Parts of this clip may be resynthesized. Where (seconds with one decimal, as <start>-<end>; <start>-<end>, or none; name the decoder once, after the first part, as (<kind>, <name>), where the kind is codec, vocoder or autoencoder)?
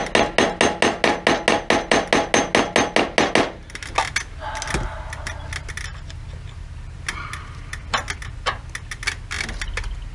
none